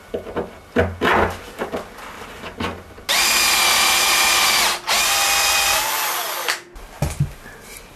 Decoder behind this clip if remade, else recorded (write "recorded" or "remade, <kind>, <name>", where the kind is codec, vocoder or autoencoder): recorded